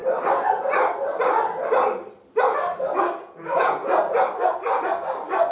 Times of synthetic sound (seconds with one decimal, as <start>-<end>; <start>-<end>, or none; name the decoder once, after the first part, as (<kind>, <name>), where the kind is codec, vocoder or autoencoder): 3.2-3.8 (vocoder, Vocos)